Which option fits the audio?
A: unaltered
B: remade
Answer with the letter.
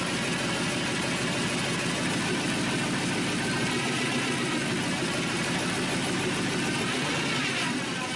A